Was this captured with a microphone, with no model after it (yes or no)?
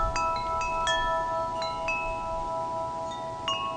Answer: yes